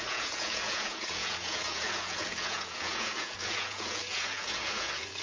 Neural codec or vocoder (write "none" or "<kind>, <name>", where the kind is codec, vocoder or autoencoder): vocoder, Vocos